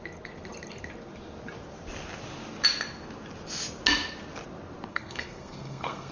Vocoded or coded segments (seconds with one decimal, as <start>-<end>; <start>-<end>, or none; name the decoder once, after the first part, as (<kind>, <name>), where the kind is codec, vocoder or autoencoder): 4.9-6.1 (codec, SNAC)